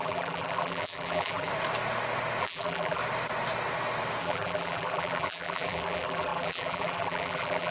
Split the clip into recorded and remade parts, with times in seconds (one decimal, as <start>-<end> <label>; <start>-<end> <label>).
0.0-1.5 remade; 1.5-2.4 recorded; 2.4-3.0 remade; 3.0-4.2 recorded; 4.2-7.7 remade